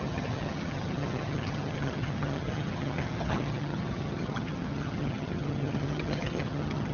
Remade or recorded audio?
remade